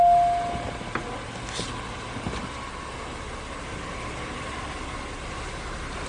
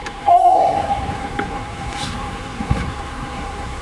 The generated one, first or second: second